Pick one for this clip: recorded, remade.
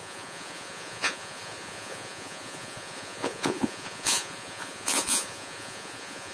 remade